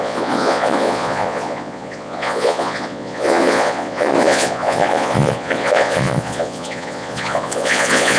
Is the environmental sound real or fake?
fake